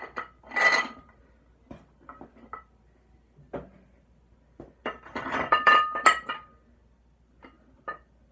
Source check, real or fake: real